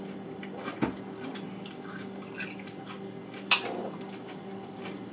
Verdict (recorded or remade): recorded